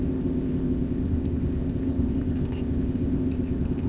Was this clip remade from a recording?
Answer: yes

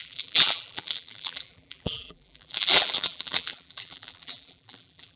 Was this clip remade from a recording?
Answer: yes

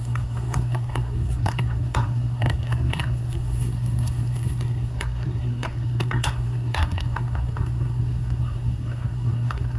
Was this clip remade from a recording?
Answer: yes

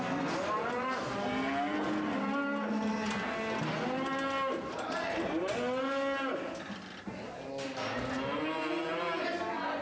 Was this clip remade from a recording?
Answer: no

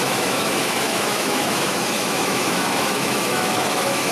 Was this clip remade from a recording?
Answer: yes